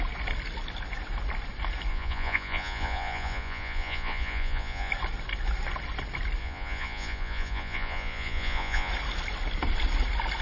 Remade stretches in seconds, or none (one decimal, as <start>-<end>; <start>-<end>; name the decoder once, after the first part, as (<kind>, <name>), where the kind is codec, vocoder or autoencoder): 1.9-4.9 (vocoder, Vocos); 6.4-8.9